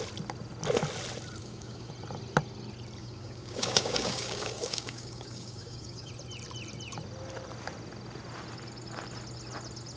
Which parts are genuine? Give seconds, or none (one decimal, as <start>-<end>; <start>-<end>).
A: 0.0-1.4; 1.9-3.0; 6.1-10.0